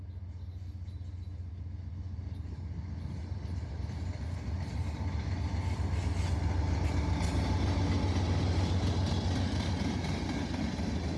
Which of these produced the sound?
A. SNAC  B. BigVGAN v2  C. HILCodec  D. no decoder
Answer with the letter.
D